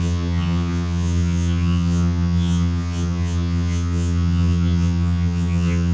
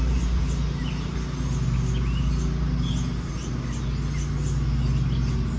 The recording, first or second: second